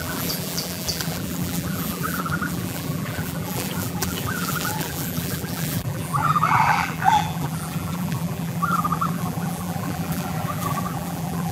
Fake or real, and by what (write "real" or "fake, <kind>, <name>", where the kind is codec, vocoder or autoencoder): fake, vocoder, BigVGAN v2